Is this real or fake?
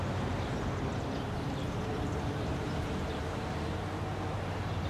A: fake